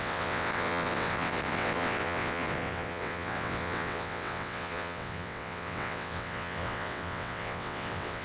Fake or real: fake